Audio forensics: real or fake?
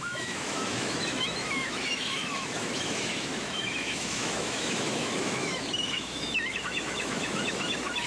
fake